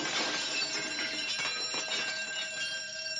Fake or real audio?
real